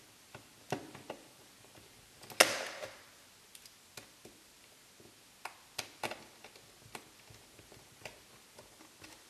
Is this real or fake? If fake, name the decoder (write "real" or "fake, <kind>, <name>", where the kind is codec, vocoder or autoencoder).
real